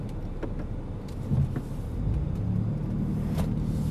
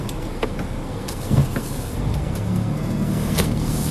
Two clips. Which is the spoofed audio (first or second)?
second